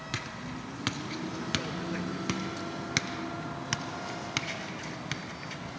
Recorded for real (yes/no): yes